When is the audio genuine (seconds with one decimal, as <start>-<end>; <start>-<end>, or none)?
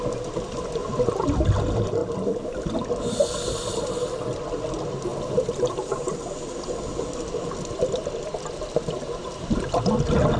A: 0.0-0.8; 1.4-2.0; 2.7-5.1; 9.8-10.4